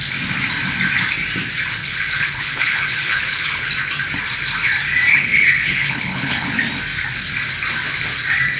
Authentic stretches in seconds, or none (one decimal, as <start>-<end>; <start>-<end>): 0.0-1.8; 3.7-5.1; 6.5-8.6